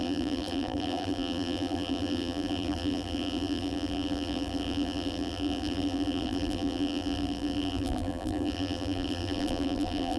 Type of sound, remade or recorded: remade